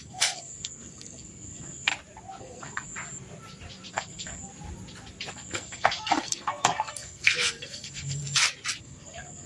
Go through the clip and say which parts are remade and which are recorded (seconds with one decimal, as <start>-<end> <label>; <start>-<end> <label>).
0.0-1.9 remade; 1.9-2.4 recorded; 2.4-2.9 remade; 2.9-3.9 recorded; 3.9-4.5 remade; 4.5-5.3 recorded; 5.3-8.2 remade; 8.2-8.8 recorded; 8.8-9.5 remade